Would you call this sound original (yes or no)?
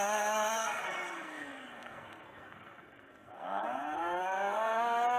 no